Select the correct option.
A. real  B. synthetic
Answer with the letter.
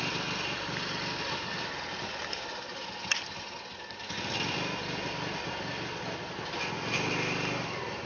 A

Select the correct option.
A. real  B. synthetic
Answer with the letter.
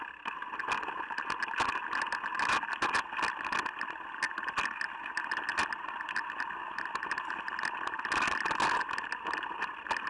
A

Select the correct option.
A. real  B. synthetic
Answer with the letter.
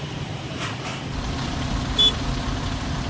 B